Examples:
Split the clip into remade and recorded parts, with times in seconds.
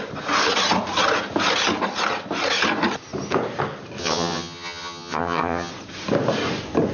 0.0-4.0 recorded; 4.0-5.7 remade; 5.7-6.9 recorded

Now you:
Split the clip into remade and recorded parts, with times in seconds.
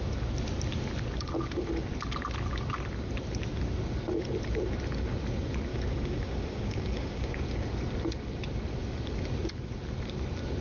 0.0-5.7 recorded; 5.7-7.4 remade; 7.4-10.6 recorded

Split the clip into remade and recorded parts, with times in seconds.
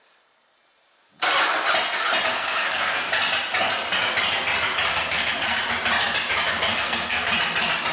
0.0-2.3 recorded; 2.3-3.1 remade; 3.1-4.9 recorded; 4.9-5.6 remade; 5.6-6.7 recorded; 6.7-7.3 remade; 7.3-7.9 recorded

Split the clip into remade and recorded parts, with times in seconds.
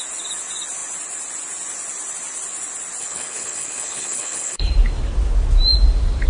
0.0-3.0 recorded; 3.0-4.7 remade; 4.7-6.3 recorded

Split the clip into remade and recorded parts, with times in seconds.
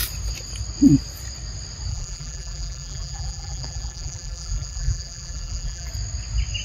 0.0-1.9 recorded; 1.9-5.9 remade; 5.9-6.6 recorded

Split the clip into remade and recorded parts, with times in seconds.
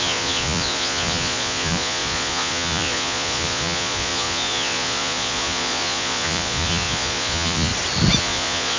0.0-7.7 remade; 7.7-8.2 recorded; 8.2-8.8 remade